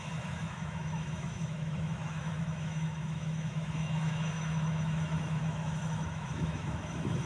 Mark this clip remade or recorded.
remade